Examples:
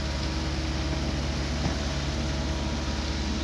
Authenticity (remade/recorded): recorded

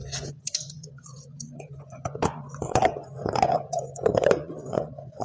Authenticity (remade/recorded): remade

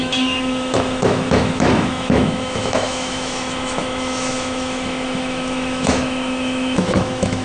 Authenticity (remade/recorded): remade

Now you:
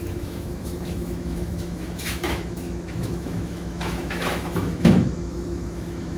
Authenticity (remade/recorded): remade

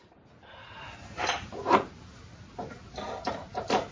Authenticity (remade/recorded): recorded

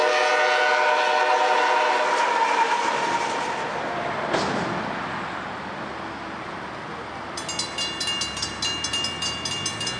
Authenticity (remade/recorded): recorded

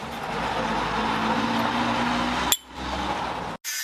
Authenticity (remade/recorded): recorded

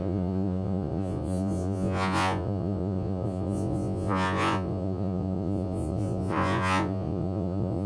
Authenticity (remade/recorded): remade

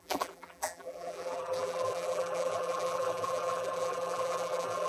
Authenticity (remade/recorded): remade